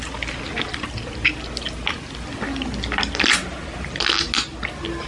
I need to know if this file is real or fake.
real